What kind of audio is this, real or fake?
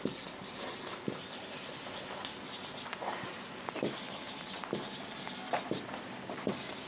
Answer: real